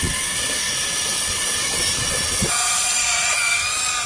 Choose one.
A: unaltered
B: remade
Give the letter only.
B